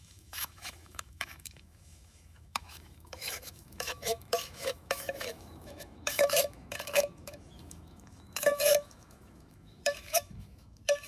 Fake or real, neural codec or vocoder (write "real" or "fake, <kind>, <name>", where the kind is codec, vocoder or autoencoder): fake, autoencoder, DAC-VAE